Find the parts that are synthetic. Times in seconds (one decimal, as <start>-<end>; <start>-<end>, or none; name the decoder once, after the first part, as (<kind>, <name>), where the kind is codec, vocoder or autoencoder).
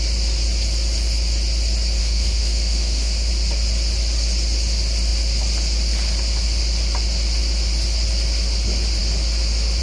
2.0-3.3 (autoencoder, DAC-VAE)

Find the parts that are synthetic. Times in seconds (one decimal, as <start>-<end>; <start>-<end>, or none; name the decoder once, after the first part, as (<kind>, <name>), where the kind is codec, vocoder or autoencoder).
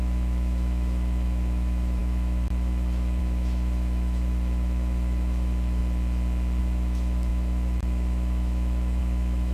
0.0-5.8 (autoencoder, DAC-VAE); 6.6-9.5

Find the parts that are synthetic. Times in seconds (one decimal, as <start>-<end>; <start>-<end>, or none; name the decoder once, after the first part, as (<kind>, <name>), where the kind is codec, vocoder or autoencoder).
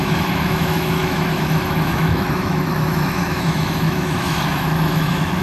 0.0-5.4 (autoencoder, DAC-VAE)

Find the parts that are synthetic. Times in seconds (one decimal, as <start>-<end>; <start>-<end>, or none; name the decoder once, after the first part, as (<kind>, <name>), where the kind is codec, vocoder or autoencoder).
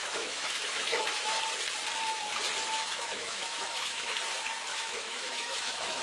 0.0-1.4 (autoencoder, DAC-VAE); 2.6-4.2; 4.7-6.0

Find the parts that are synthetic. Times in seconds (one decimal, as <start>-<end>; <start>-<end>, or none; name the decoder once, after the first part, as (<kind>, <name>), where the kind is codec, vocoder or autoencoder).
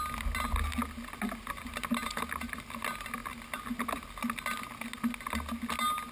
none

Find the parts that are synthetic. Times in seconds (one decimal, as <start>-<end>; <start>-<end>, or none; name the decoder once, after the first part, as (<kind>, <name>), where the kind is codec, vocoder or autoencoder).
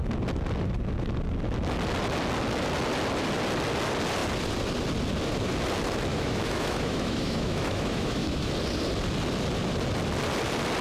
6.1-8.5 (autoencoder, DAC-VAE)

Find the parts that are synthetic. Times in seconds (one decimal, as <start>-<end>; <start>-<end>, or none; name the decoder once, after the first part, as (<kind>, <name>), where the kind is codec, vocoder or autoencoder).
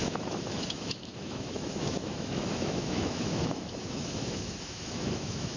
0.0-5.6 (autoencoder, DAC-VAE)